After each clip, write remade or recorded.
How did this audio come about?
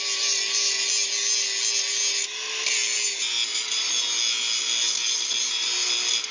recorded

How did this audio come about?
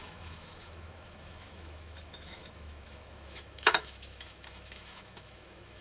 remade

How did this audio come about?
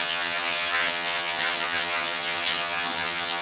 remade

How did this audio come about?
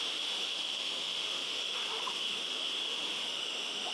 remade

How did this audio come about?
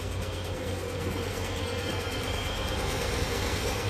remade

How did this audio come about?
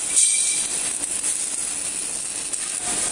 recorded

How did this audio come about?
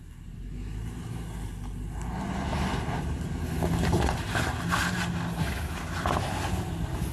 recorded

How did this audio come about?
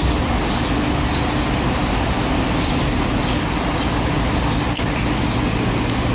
recorded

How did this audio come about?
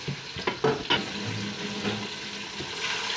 recorded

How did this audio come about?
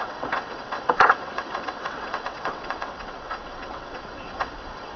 remade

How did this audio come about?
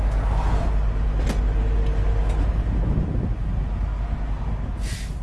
recorded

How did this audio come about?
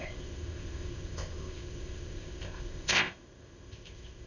remade